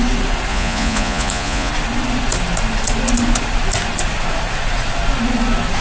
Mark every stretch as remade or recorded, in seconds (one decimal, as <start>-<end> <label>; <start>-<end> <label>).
0.0-0.5 recorded; 0.5-1.7 remade; 1.7-5.8 recorded